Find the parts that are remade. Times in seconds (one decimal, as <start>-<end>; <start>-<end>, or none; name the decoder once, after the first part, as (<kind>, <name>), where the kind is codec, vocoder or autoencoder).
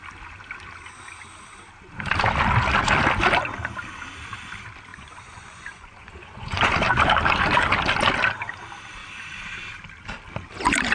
4.9-6.7 (vocoder, Vocos)